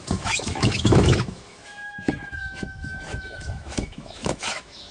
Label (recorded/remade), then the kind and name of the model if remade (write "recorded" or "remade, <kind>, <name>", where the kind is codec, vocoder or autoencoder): remade, autoencoder, DAC-VAE